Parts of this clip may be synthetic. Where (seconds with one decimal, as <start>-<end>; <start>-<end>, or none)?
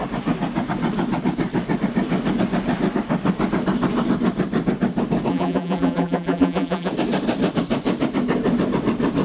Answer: 5.3-6.9